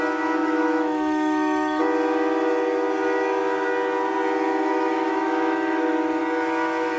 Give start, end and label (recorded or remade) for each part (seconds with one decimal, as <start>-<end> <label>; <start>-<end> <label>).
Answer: 0.0-0.4 recorded; 0.4-1.8 remade; 1.8-4.5 recorded; 4.5-6.2 remade; 6.2-7.0 recorded